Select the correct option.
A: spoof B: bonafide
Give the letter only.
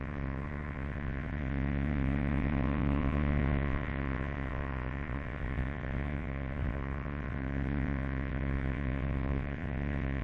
A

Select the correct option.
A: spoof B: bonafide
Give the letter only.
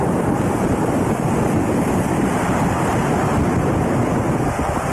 B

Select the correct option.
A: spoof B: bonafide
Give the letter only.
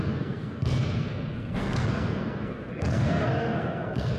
A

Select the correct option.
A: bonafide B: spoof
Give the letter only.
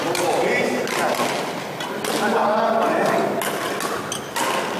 A